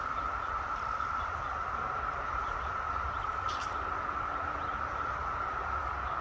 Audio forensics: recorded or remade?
remade